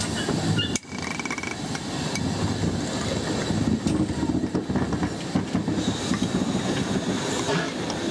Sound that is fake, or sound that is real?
real